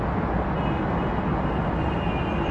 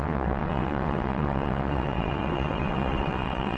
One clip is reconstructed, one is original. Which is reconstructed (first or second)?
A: second